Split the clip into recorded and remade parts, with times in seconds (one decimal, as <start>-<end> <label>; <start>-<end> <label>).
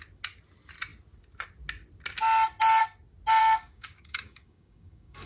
0.0-3.4 recorded; 3.4-5.3 remade